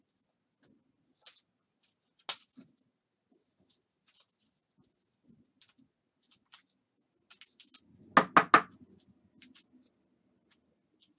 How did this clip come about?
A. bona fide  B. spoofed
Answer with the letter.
A